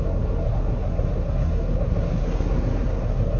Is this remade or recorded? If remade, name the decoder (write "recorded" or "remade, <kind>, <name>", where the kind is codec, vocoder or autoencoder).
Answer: remade, codec, SNAC